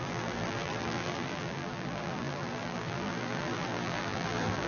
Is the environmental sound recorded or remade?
remade